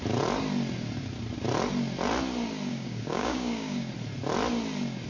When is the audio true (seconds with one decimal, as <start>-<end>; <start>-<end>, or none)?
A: 0.0-2.7; 3.9-5.1